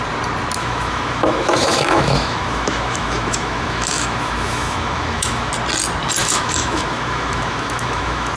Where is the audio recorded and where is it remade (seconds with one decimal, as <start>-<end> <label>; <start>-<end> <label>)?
0.0-0.6 recorded; 0.6-5.5 remade; 5.5-6.2 recorded; 6.2-8.4 remade